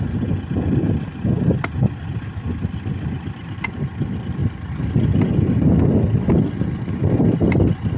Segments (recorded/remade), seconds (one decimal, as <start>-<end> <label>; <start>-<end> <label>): 0.0-4.4 recorded; 4.4-5.7 remade; 5.7-8.0 recorded